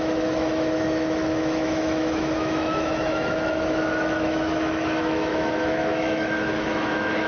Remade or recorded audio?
remade